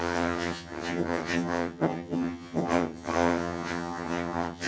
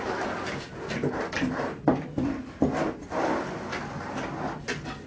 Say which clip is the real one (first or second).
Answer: second